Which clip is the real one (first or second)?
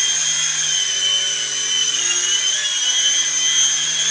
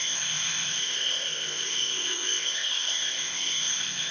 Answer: first